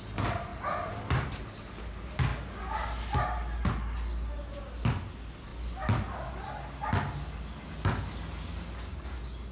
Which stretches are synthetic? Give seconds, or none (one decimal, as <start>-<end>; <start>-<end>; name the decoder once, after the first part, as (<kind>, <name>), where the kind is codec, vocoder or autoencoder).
none